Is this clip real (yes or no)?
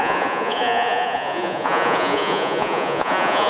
no